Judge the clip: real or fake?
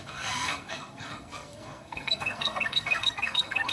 fake